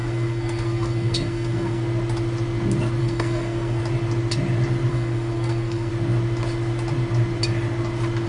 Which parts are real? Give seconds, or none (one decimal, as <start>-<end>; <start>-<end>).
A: 1.8-3.0; 3.8-4.9; 5.9-8.3